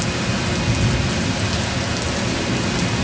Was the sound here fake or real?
real